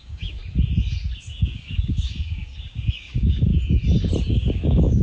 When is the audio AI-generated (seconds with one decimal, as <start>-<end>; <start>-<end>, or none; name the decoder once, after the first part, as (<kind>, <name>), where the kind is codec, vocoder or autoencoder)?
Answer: 0.0-0.4 (codec, DAC); 1.2-3.5; 4.3-5.0